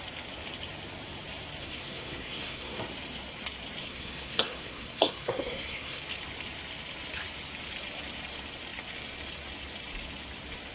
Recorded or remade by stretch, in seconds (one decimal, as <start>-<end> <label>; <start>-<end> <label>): 0.0-1.6 recorded; 1.6-2.8 remade; 2.8-3.8 recorded; 3.8-6.0 remade; 6.0-10.7 recorded

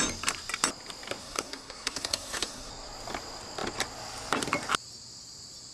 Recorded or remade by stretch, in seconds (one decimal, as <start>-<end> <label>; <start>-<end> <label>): 0.0-1.2 recorded; 1.2-2.7 remade; 2.7-5.7 recorded

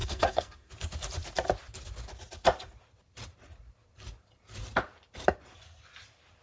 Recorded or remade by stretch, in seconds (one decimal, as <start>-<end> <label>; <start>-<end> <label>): 0.0-0.7 remade; 0.7-6.4 recorded

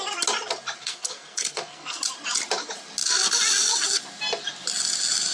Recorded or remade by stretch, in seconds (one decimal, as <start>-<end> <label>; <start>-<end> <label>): 0.0-0.8 recorded; 0.8-2.0 remade; 2.0-5.3 recorded